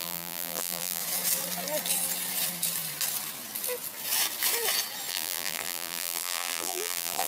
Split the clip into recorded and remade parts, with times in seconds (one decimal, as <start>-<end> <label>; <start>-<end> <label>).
0.0-1.0 remade; 1.0-5.1 recorded; 5.1-7.3 remade